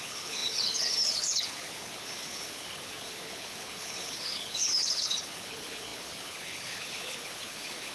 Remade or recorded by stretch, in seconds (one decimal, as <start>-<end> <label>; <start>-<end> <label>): 0.0-7.9 remade

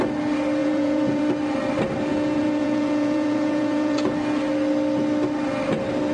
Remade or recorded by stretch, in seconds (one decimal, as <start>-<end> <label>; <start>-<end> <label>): 0.0-0.6 recorded; 0.6-1.2 remade; 1.2-2.1 recorded; 2.1-4.1 remade; 4.1-6.1 recorded

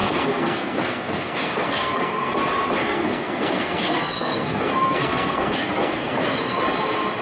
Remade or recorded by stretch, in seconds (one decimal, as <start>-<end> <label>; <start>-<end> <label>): 0.0-2.4 remade; 2.4-2.8 recorded; 2.8-6.6 remade; 6.6-7.2 recorded

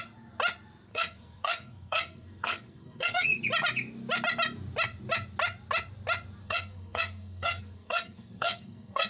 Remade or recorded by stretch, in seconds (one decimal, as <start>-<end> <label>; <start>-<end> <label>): 0.0-0.9 recorded; 0.9-3.4 remade; 3.4-6.4 recorded; 6.4-9.1 remade